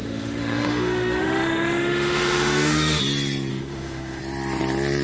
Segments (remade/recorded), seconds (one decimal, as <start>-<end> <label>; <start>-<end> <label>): 0.0-3.0 remade; 3.0-3.5 recorded; 3.5-4.2 remade; 4.2-5.0 recorded